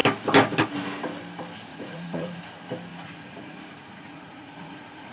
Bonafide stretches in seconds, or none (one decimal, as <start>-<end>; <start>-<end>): 0.0-1.7; 2.4-2.9